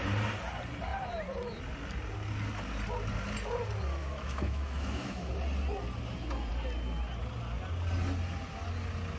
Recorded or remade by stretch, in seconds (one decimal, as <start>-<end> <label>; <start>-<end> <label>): 0.0-4.0 recorded; 4.0-5.3 remade; 5.3-9.2 recorded